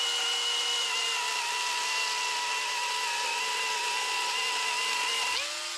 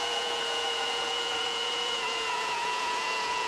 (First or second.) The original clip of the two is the first